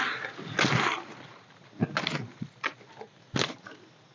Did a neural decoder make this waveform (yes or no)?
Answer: no